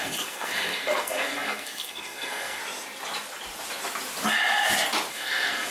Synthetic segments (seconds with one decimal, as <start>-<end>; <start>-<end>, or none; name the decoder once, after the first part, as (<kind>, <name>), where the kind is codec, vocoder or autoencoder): 0.0-2.6 (codec, SNAC); 5.1-5.7